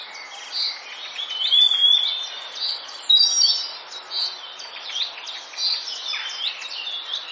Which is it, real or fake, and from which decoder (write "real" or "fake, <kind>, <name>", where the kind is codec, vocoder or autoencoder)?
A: real